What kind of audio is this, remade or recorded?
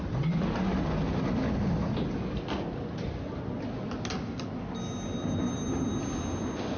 recorded